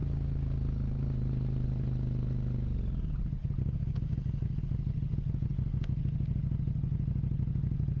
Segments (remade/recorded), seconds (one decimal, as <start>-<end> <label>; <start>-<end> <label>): 0.0-8.0 recorded

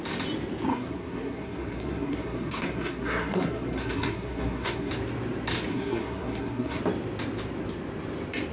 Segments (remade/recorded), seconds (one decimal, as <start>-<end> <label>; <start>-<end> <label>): 0.0-0.7 recorded; 0.7-4.9 remade; 4.9-5.7 recorded; 5.7-6.8 remade; 6.8-8.5 recorded

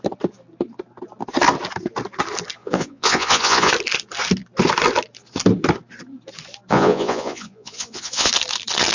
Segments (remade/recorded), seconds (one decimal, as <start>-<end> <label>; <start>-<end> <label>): 0.0-2.6 recorded; 2.6-3.7 remade; 3.7-6.7 recorded; 6.7-8.3 remade; 8.3-8.9 recorded